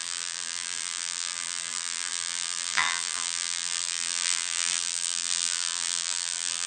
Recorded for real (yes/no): no